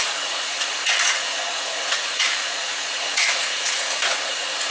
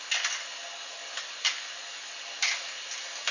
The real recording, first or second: second